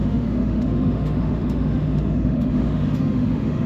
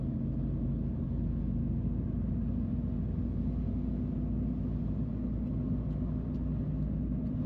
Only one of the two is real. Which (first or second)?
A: second